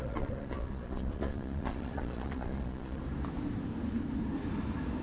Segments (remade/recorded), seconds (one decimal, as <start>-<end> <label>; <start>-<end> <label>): 0.0-3.0 remade; 3.0-5.0 recorded